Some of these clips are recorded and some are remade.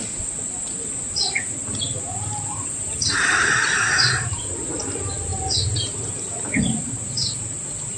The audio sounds recorded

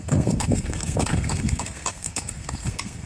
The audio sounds remade